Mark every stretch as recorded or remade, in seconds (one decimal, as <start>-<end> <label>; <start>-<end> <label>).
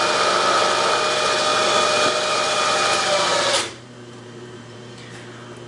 0.0-1.5 recorded; 1.5-4.9 remade; 4.9-5.7 recorded